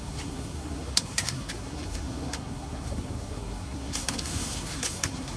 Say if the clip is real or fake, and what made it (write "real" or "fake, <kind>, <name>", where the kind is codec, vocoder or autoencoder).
fake, codec, SNAC